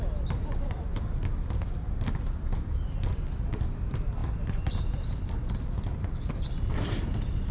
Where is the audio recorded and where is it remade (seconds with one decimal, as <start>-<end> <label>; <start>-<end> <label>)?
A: 0.0-7.5 recorded